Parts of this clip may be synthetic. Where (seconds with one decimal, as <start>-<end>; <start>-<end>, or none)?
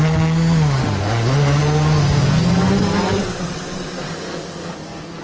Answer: 3.2-4.1